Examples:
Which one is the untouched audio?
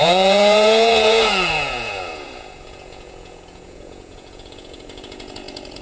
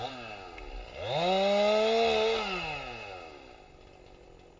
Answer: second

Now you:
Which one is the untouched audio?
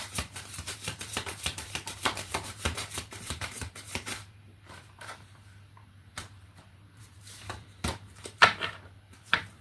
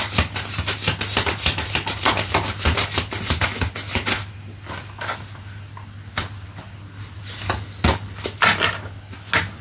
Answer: second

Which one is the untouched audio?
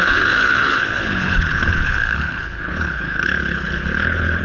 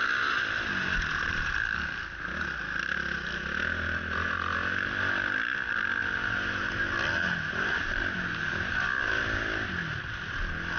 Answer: second